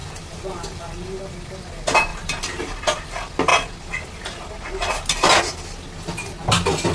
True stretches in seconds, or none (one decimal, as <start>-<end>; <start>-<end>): 1.2-2.1; 2.6-6.9